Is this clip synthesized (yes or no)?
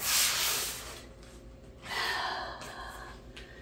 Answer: no